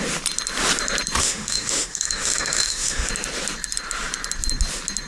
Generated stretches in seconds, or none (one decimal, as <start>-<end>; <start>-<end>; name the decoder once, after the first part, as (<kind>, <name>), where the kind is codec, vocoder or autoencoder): 1.2-3.1 (autoencoder, DAC-VAE)